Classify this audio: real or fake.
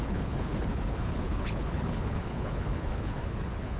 fake